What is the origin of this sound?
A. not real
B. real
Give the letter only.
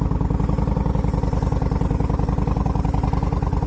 B